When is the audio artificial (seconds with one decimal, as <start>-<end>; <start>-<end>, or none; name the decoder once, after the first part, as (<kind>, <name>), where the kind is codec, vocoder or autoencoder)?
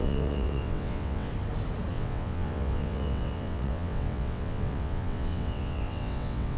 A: 0.0-1.3 (vocoder, WaveNeXt); 1.9-6.6